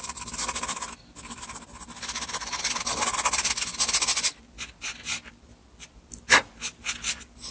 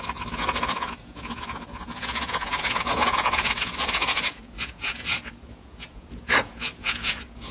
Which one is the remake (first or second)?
second